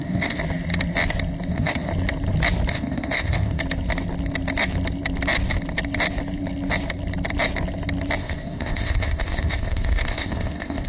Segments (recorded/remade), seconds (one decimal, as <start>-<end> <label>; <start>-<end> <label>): 0.0-0.4 remade; 0.4-1.5 recorded; 1.5-1.9 remade; 1.9-2.7 recorded; 2.7-3.6 remade; 3.6-8.2 recorded; 8.2-10.9 remade